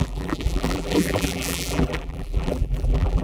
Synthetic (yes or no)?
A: yes